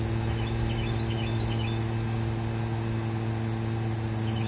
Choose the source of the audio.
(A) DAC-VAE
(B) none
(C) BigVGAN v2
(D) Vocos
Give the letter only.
B